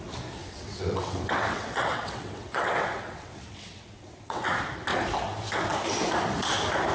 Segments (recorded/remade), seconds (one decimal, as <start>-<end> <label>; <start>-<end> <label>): 0.0-0.4 recorded; 0.4-4.5 remade; 4.5-6.9 recorded